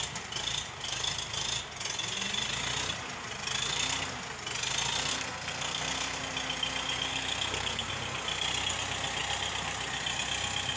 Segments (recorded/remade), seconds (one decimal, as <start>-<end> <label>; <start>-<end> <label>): 0.0-5.1 recorded; 5.1-6.2 remade; 6.2-7.1 recorded; 7.1-7.9 remade; 7.9-10.8 recorded